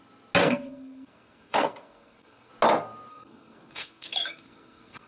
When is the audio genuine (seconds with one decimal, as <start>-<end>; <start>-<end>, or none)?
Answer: 0.0-0.4; 2.5-3.1